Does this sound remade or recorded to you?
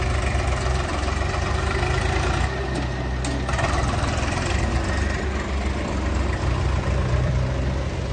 recorded